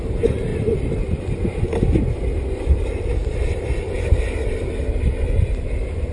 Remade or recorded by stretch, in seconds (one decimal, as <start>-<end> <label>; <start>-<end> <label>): 0.0-0.5 recorded; 0.5-1.3 remade; 1.3-3.2 recorded; 3.2-4.2 remade; 4.2-6.1 recorded